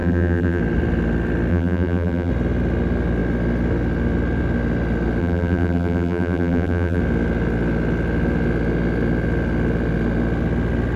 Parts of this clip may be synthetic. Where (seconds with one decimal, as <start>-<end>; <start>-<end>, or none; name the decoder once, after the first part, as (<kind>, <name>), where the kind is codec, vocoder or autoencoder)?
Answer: 0.0-0.6 (vocoder, BigVGAN v2); 1.5-2.3; 5.2-7.0